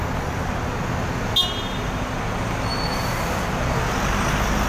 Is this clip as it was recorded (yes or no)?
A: yes